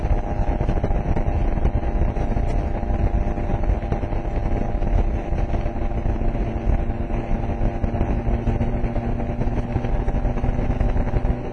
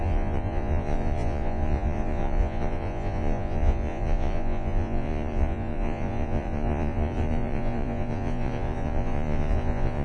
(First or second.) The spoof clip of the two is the second